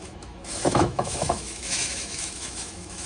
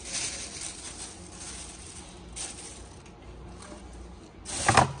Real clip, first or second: second